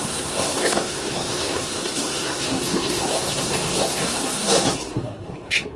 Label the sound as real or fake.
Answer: fake